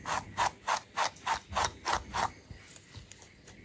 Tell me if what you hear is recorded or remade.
recorded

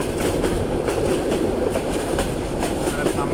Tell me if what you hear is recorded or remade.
remade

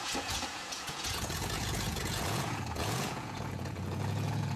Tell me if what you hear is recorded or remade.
remade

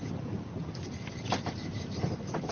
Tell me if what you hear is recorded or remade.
recorded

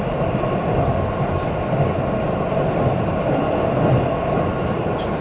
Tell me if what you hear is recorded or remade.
remade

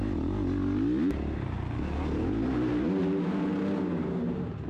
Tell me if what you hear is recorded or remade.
recorded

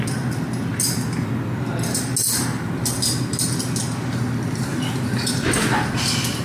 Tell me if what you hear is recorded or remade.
recorded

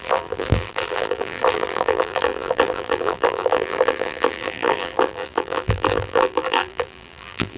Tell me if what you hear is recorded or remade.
remade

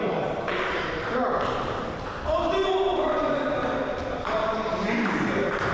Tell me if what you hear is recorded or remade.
remade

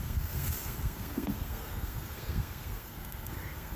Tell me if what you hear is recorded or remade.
remade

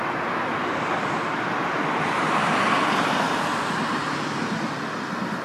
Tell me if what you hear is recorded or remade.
recorded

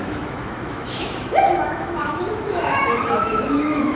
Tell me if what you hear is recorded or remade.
remade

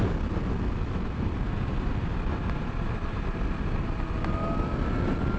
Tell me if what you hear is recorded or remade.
recorded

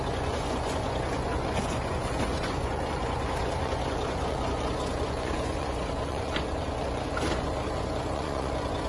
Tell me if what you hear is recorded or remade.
remade